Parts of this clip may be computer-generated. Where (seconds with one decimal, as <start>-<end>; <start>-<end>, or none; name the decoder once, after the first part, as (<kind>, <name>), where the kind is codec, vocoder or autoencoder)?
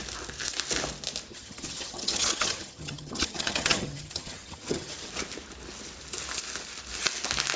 1.3-5.1 (vocoder, HiFi-GAN)